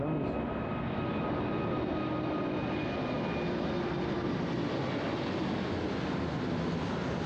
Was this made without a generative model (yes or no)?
yes